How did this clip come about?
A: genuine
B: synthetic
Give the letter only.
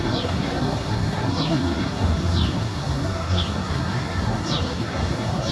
B